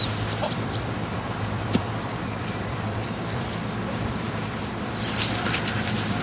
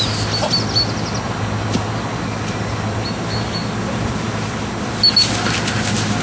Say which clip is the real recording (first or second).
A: second